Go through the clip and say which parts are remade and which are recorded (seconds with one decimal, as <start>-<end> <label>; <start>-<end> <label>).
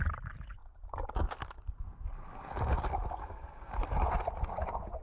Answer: 0.0-3.2 recorded; 3.2-3.7 remade; 3.7-5.0 recorded